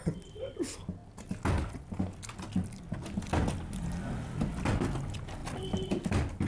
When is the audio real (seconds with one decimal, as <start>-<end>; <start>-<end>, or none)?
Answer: 0.0-6.5